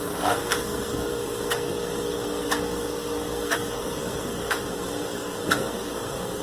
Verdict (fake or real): fake